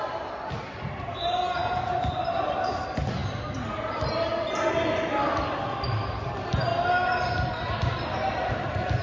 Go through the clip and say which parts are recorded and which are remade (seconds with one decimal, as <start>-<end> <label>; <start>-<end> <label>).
0.0-9.0 recorded